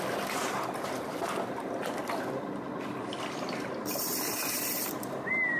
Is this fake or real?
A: fake